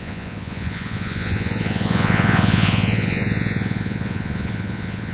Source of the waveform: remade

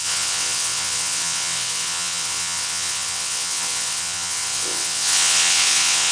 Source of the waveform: remade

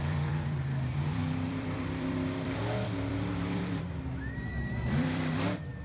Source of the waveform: remade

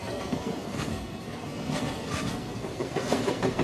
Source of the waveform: remade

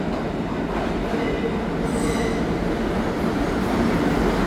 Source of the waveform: recorded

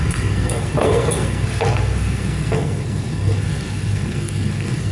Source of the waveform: remade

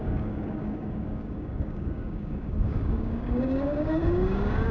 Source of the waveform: remade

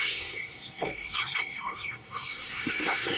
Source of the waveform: remade